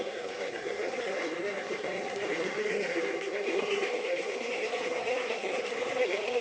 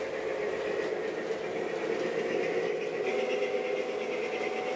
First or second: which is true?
second